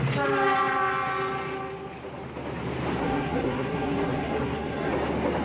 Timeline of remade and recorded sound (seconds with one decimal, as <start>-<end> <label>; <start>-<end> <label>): 0.0-3.0 recorded; 3.0-4.9 remade; 4.9-5.4 recorded